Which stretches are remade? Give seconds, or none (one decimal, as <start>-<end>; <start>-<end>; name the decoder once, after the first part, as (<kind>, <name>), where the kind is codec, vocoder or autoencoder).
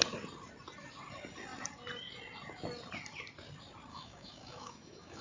3.9-5.2 (autoencoder, DAC-VAE)